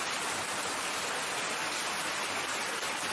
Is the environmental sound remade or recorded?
recorded